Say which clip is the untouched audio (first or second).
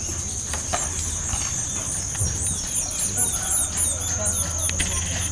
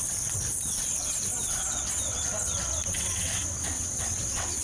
first